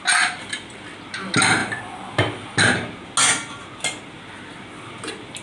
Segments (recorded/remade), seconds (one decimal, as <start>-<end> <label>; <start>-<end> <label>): 0.0-5.4 recorded